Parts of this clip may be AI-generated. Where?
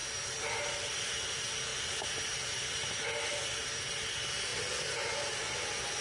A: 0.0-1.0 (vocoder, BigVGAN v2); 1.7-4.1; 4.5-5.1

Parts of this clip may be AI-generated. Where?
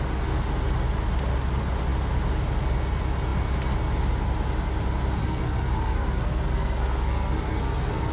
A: 5.2-8.1 (codec, SNAC)